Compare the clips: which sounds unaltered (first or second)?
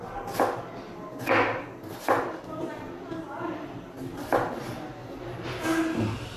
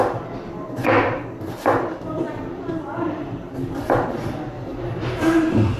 first